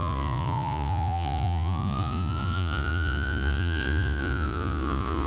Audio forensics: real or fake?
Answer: fake